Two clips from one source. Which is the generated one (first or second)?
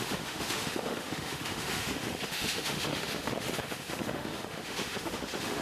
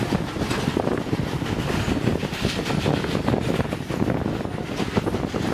first